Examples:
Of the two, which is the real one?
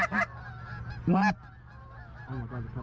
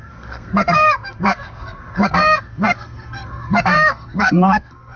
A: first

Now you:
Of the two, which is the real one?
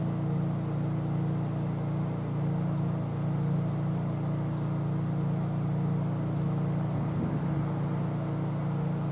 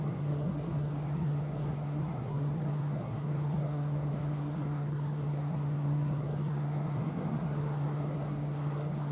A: first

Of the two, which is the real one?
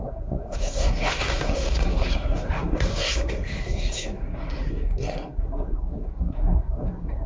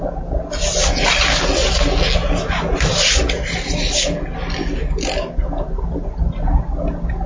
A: second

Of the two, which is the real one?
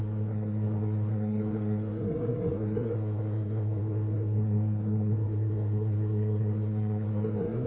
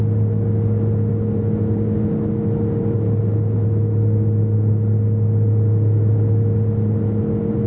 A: second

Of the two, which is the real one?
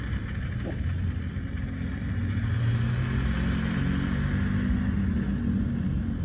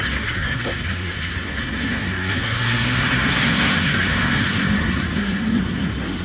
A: first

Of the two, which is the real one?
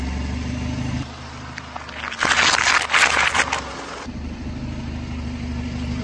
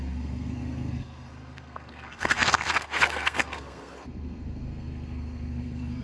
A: first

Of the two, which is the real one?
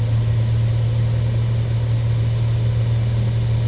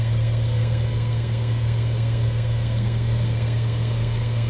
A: first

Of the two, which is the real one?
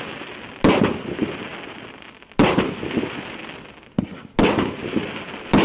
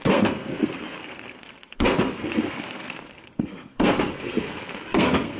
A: first